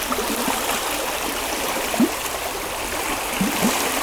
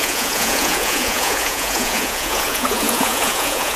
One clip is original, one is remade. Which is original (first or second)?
first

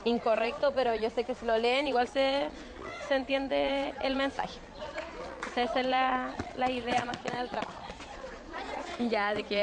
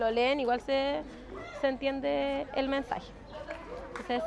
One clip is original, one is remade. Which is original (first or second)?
second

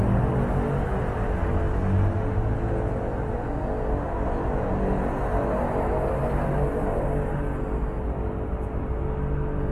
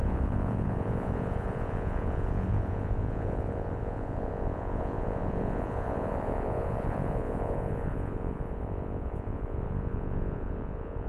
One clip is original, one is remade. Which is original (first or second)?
first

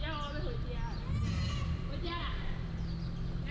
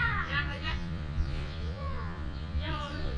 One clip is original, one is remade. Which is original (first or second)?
first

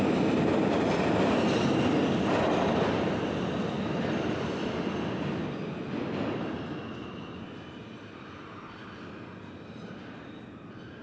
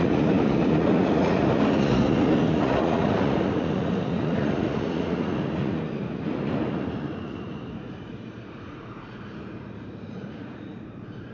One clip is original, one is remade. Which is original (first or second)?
first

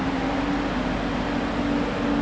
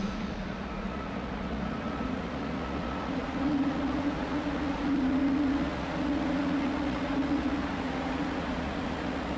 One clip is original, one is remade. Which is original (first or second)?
first